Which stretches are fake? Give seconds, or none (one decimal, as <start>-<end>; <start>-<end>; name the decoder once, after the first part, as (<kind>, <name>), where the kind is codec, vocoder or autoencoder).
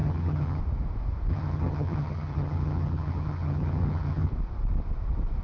0.0-0.6 (vocoder, HiFi-GAN); 1.3-4.3